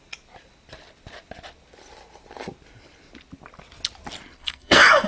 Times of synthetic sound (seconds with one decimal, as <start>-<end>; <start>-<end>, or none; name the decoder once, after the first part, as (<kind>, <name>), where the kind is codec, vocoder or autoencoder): 4.4-5.1 (codec, SNAC)